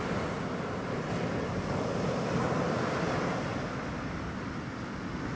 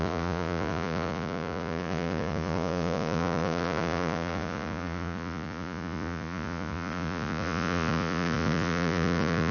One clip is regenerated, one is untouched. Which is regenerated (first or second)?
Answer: second